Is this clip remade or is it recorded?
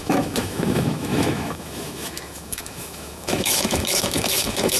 remade